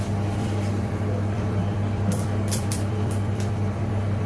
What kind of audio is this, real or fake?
fake